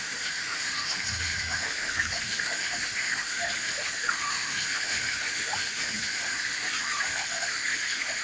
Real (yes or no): no